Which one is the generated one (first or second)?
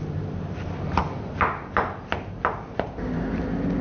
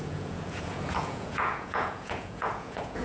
second